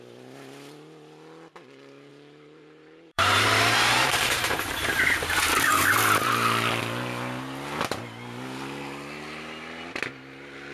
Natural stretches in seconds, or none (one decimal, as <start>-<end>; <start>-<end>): 0.0-2.1; 6.3-10.7